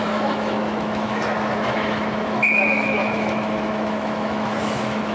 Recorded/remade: remade